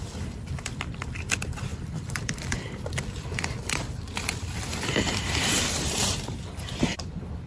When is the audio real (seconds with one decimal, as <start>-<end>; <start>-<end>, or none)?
none